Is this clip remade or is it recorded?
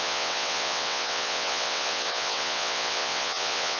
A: remade